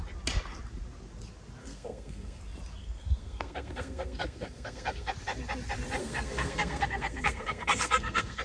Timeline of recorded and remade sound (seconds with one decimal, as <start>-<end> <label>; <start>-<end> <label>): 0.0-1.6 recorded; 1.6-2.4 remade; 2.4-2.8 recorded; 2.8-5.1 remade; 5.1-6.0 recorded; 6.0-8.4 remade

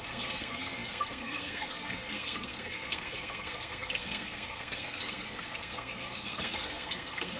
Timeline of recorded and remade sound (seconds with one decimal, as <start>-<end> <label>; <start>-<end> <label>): 0.0-7.4 remade

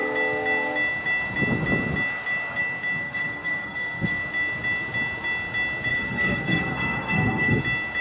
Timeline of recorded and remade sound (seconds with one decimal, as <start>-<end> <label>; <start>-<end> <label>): 0.0-3.0 recorded; 3.0-4.2 remade; 4.2-5.9 recorded; 5.9-7.6 remade; 7.6-8.0 recorded

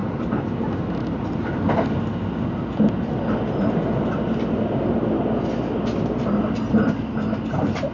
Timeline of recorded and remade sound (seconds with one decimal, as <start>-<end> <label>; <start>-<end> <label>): 0.0-7.9 recorded

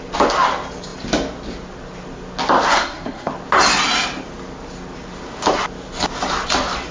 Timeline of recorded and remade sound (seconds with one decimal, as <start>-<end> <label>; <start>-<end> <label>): 0.0-2.7 recorded; 2.7-3.3 remade; 3.3-6.9 recorded

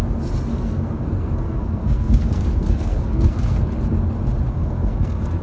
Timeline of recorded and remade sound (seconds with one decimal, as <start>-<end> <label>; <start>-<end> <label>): 0.0-0.5 recorded; 0.5-3.7 remade; 3.7-4.5 recorded; 4.5-5.4 remade